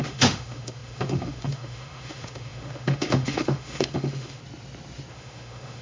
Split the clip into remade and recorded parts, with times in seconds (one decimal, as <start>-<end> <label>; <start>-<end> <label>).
0.0-4.4 remade; 4.4-5.1 recorded; 5.1-5.8 remade